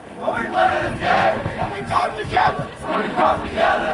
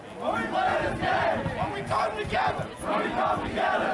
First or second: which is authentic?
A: second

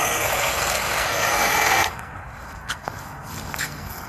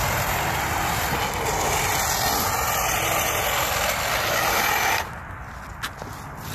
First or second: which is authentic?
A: second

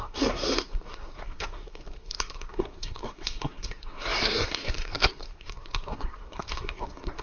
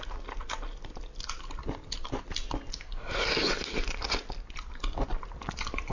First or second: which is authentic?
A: second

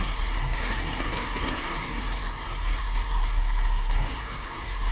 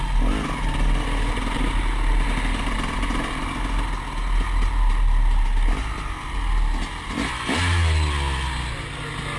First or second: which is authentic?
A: second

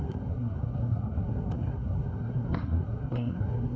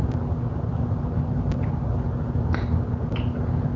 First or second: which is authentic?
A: second